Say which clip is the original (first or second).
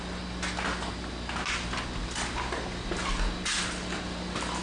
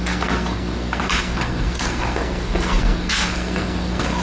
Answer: first